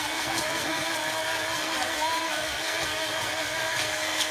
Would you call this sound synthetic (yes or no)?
yes